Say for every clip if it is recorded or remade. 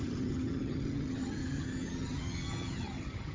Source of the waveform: remade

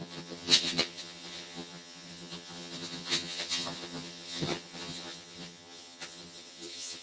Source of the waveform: remade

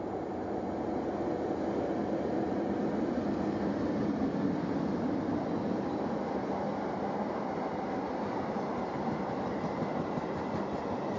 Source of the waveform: recorded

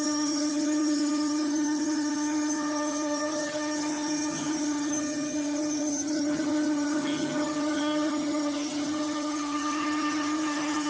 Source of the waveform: remade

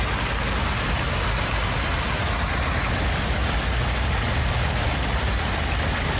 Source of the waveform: recorded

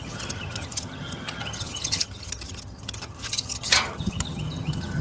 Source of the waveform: remade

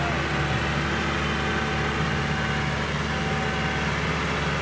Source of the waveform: recorded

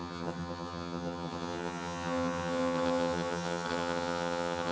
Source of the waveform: remade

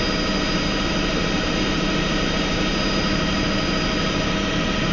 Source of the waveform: recorded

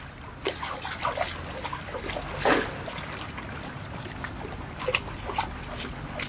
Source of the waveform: recorded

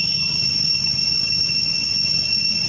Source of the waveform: recorded